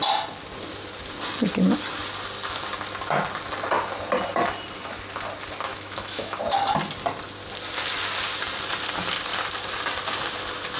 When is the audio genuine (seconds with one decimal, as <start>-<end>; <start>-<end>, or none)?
0.0-5.7; 6.4-10.8